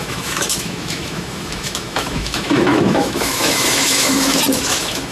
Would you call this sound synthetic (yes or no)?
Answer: yes